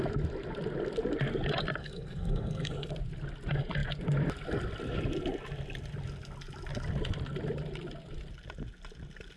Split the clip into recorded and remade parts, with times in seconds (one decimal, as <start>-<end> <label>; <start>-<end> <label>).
0.0-1.8 recorded; 1.8-2.9 remade; 2.9-9.4 recorded